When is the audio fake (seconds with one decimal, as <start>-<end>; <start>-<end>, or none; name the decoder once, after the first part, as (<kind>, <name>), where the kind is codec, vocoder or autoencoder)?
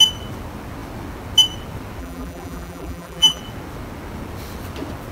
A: 2.0-3.4 (vocoder, BigVGAN v2)